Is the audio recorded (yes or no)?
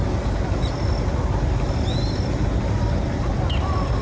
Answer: yes